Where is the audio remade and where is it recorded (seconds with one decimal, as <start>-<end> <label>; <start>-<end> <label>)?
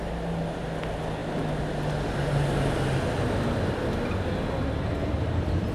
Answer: 0.0-5.7 recorded